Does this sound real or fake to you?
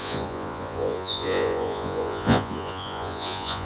fake